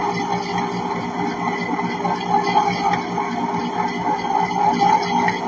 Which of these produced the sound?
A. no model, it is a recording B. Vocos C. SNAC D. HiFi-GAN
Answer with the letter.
A